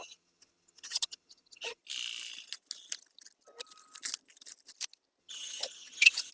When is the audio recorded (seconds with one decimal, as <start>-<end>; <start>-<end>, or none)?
1.8-5.2